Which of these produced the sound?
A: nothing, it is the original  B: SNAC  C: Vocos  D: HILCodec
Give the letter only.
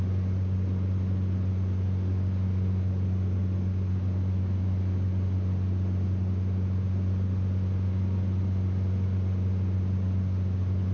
A